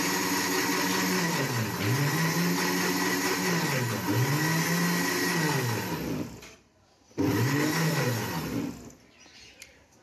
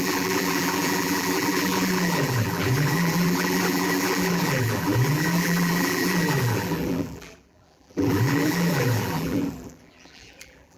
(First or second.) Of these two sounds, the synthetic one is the second